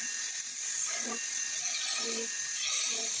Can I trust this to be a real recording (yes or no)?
yes